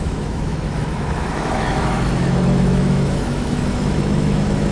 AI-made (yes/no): yes